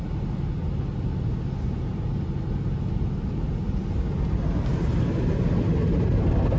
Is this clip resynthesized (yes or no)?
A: no